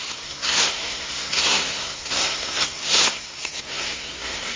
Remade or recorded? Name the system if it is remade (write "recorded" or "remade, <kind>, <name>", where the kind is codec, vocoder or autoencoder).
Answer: remade, codec, SNAC